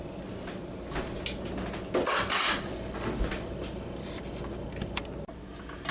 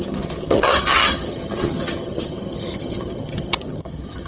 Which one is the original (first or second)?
first